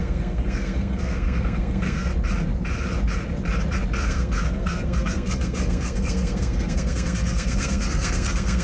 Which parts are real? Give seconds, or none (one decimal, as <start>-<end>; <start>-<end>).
2.1-4.0